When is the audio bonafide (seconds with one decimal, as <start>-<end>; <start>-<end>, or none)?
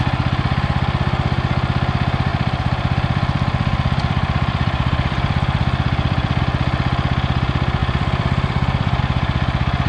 0.0-2.3; 6.4-7.8; 9.0-9.9